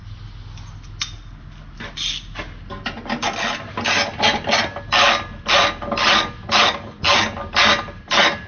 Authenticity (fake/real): real